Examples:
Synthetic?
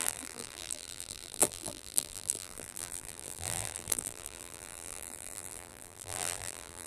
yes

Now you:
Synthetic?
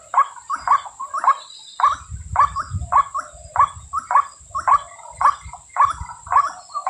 no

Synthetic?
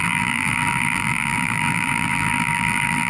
yes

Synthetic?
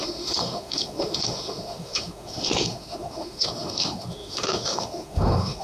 yes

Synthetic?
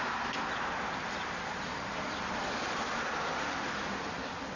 no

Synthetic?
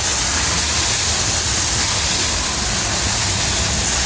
no